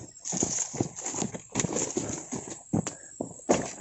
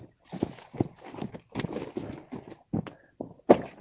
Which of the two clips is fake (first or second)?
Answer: first